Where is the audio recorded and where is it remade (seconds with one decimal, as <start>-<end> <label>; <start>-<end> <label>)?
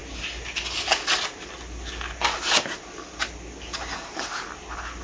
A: 0.0-5.0 recorded